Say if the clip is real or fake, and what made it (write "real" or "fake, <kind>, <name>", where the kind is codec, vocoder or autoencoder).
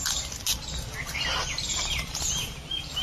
real